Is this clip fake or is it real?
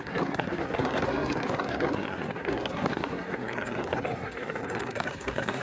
fake